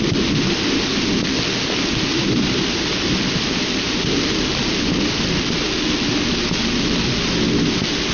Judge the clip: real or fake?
real